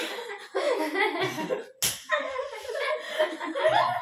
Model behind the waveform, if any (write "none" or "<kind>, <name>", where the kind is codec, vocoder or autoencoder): none